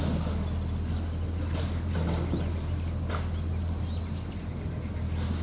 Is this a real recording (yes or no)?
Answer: yes